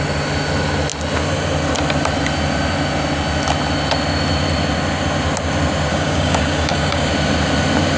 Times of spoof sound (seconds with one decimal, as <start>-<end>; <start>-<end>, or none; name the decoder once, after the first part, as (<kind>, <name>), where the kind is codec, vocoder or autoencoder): 5.9-7.1 (codec, DAC)